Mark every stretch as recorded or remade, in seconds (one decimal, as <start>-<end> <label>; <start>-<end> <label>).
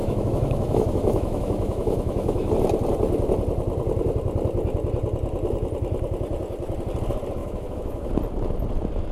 0.0-2.5 remade; 2.5-7.4 recorded; 7.4-8.1 remade; 8.1-9.1 recorded